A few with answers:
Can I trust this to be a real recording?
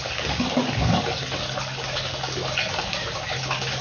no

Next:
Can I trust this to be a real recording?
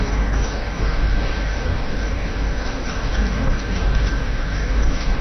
no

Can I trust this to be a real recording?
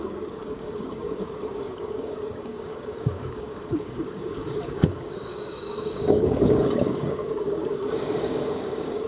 no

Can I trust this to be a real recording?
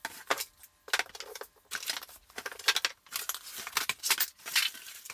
yes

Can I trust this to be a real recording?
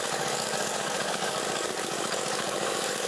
no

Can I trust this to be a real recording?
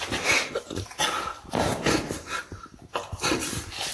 yes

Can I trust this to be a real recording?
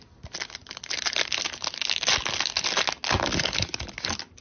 yes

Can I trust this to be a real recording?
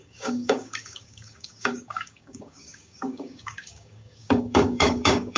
no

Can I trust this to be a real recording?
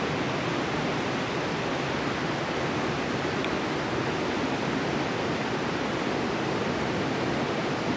yes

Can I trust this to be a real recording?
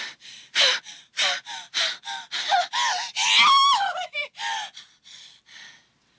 yes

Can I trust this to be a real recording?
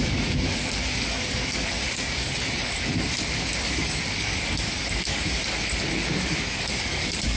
no